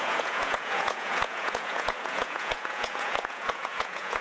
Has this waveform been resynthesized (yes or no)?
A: yes